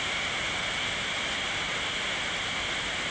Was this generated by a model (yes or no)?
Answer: no